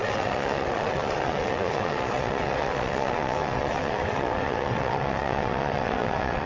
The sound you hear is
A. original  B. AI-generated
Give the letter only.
B